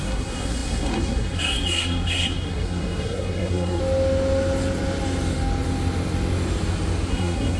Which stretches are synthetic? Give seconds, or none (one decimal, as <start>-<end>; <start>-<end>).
0.0-3.8; 7.1-7.6

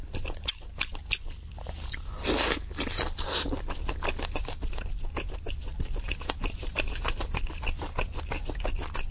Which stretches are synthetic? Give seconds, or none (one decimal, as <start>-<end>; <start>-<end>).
5.7-7.2